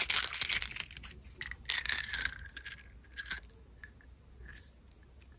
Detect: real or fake real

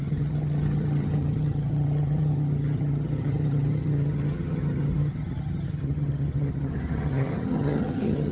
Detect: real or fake fake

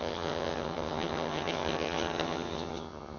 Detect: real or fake fake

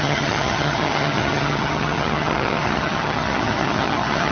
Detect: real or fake fake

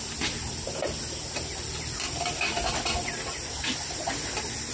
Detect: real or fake real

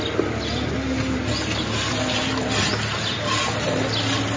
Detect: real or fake real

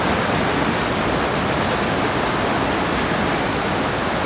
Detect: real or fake real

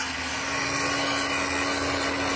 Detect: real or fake real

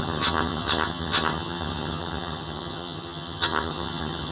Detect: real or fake fake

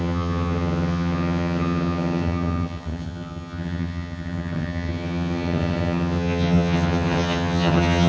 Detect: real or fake fake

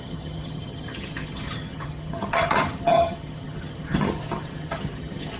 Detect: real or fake fake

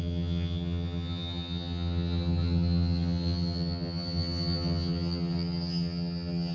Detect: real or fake fake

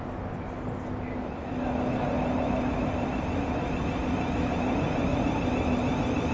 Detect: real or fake real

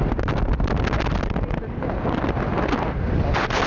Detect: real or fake real